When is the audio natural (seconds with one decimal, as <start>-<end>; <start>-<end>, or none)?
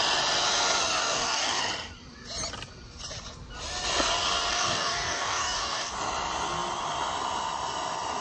0.0-1.0; 1.6-4.5; 5.9-8.2